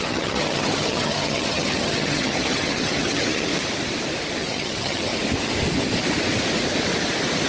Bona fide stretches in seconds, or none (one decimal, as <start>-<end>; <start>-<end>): 3.5-4.4; 5.1-7.5